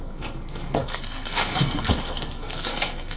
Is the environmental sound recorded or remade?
remade